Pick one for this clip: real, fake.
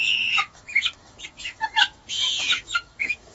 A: fake